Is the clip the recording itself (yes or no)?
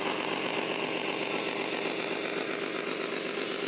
yes